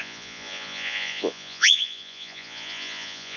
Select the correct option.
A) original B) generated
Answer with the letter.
B